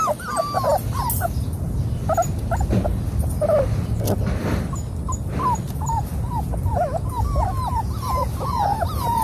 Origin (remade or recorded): recorded